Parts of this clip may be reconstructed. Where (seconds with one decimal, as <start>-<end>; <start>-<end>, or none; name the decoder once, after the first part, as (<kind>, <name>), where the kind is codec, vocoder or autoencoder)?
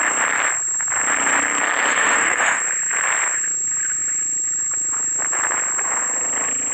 1.9-2.6 (autoencoder, DAC-VAE)